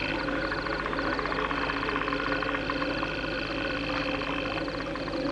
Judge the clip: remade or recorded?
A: recorded